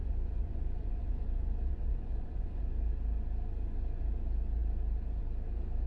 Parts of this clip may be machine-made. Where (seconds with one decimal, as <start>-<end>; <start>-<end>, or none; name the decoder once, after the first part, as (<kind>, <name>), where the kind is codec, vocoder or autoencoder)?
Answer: 0.0-2.6 (vocoder, Vocos)